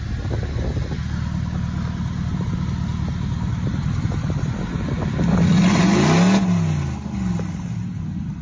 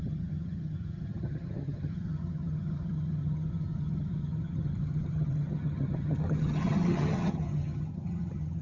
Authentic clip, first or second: first